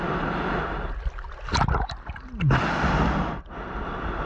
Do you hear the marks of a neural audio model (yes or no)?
no